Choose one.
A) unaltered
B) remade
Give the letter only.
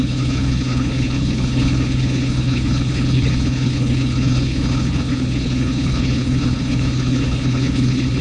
B